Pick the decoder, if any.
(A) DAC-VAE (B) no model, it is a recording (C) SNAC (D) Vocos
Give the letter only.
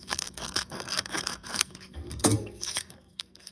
C